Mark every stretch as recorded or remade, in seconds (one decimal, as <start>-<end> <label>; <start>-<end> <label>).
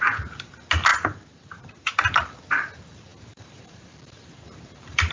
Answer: 0.0-0.9 recorded; 0.9-2.1 remade; 2.1-3.1 recorded; 3.1-5.1 remade